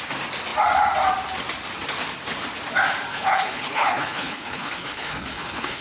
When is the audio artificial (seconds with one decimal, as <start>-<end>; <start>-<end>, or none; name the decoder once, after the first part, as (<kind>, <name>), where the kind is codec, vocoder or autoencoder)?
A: 3.1-5.8 (codec, HILCodec)